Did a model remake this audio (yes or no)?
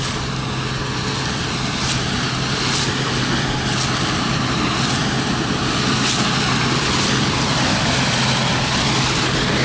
no